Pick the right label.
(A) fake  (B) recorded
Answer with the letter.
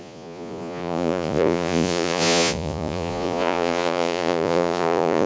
A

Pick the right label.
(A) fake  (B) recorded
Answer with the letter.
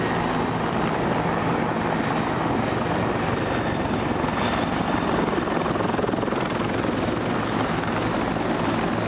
B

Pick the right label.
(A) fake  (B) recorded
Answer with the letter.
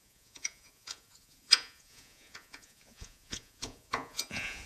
A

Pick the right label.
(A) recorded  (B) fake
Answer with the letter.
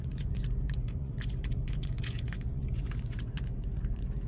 B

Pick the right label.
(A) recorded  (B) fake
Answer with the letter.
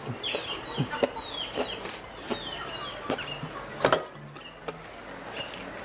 A